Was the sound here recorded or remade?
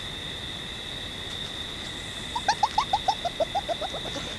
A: recorded